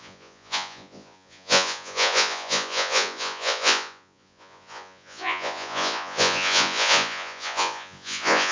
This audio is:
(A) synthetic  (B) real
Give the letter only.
A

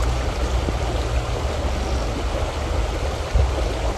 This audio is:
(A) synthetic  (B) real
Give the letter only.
B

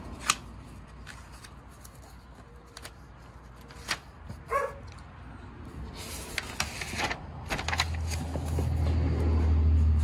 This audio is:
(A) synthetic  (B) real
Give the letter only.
B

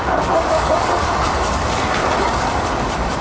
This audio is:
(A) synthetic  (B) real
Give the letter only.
A